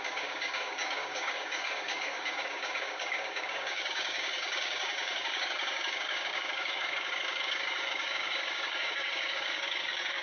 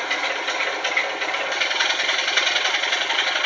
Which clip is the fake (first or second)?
first